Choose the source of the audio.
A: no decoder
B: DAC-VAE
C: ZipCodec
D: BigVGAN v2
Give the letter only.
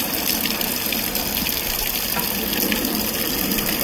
A